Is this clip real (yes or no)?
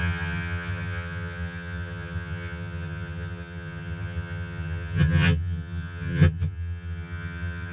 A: no